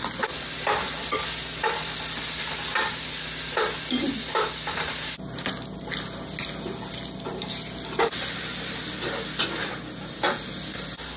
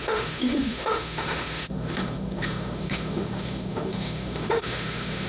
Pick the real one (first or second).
first